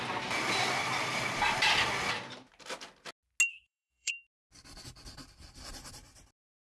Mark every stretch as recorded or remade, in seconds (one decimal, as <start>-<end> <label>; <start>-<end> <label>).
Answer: 0.0-3.5 recorded; 3.5-4.1 remade; 4.1-6.7 recorded